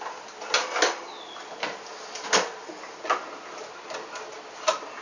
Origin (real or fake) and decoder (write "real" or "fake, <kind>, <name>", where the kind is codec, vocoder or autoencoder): real